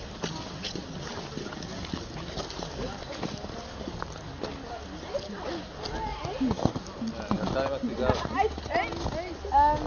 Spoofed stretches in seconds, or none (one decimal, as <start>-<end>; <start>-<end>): none